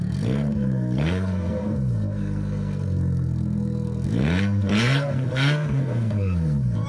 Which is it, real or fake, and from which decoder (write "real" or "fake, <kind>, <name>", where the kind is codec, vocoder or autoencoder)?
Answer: fake, codec, SNAC